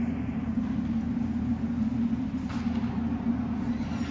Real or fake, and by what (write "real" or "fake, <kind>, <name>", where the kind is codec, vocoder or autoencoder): real